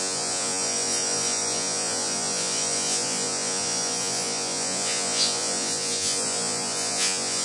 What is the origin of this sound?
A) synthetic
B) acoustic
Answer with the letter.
A